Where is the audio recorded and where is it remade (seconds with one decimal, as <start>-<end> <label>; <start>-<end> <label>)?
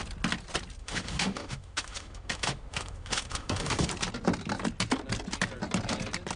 0.0-0.8 recorded; 0.8-3.9 remade; 3.9-6.4 recorded